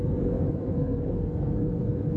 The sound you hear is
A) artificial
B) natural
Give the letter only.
A